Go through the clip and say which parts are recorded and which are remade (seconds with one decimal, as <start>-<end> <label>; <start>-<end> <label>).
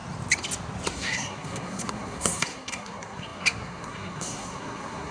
0.0-0.9 recorded; 0.9-5.1 remade